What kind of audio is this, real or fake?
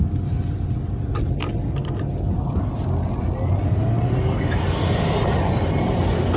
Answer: real